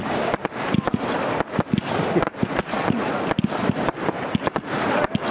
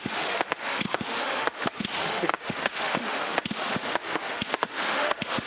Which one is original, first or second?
first